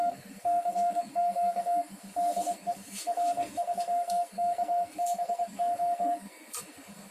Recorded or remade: remade